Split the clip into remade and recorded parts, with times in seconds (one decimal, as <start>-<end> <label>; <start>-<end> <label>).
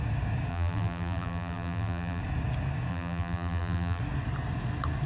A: 0.0-0.5 recorded; 0.5-2.2 remade; 2.2-2.9 recorded; 2.9-4.0 remade; 4.0-5.1 recorded